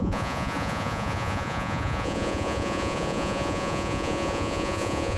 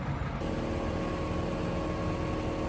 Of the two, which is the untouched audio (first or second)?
second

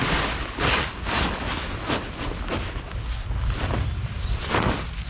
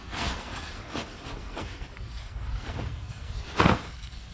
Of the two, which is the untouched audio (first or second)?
first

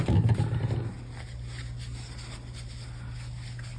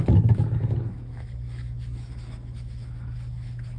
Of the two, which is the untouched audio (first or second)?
first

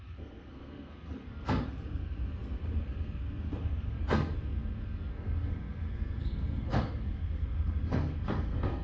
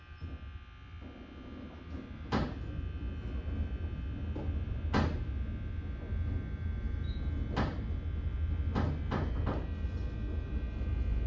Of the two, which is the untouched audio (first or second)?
second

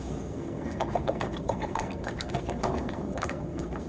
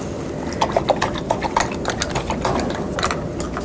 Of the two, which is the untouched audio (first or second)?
second